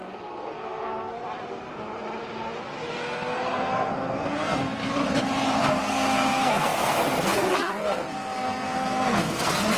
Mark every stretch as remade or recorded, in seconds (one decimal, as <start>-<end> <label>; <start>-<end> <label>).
0.0-1.2 remade; 1.2-2.9 recorded; 2.9-4.8 remade; 4.8-5.6 recorded; 5.6-9.8 remade